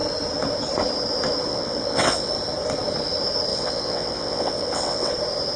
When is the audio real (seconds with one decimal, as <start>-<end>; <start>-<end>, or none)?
0.0-1.5; 2.3-3.5; 5.1-5.6